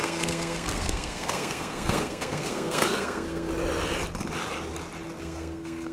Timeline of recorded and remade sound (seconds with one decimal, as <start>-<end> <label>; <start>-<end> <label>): 0.0-3.5 remade; 3.5-5.2 recorded; 5.2-5.9 remade